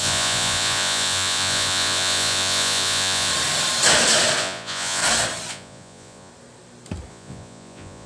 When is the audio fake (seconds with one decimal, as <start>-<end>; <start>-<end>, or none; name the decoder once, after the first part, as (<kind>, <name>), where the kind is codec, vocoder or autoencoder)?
0.0-3.3 (vocoder, Vocos); 4.4-5.0; 5.5-6.3; 7.1-8.1